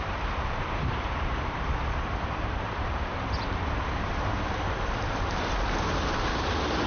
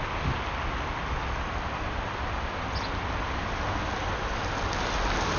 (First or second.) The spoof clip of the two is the first